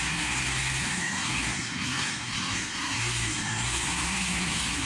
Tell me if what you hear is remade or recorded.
remade